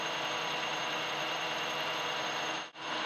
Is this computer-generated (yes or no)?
no